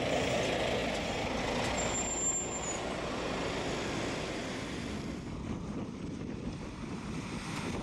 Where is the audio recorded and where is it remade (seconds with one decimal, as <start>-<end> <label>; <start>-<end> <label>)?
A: 0.0-5.8 recorded; 5.8-6.6 remade; 6.6-7.8 recorded